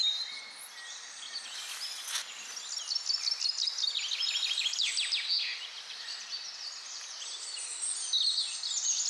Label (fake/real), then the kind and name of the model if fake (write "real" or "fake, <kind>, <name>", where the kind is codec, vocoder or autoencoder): real